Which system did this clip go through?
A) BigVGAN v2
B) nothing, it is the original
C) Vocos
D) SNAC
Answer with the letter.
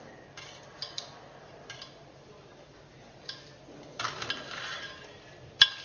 A